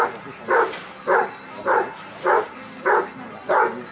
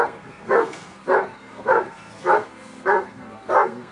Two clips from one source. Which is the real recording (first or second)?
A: first